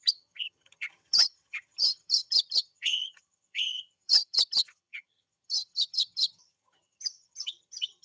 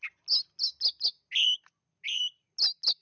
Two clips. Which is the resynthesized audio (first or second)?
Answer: first